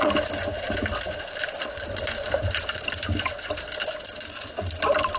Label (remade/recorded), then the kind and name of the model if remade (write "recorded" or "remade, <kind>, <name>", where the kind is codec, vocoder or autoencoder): recorded